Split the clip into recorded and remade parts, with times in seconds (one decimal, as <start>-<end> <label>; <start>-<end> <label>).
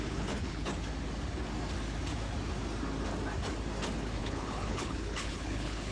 0.0-0.7 remade; 0.7-4.2 recorded; 4.2-5.9 remade